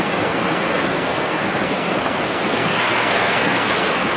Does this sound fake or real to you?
fake